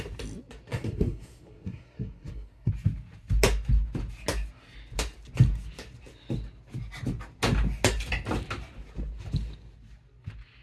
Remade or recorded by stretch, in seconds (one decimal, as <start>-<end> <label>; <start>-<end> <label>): 0.0-0.7 recorded; 0.7-2.7 remade; 2.7-10.6 recorded